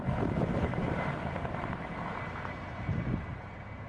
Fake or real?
real